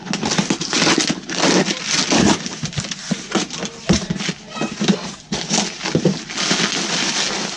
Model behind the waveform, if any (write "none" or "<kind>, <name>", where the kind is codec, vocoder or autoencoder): none